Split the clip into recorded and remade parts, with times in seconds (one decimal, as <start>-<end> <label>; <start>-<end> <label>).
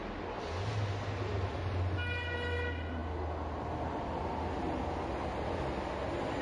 0.0-6.4 recorded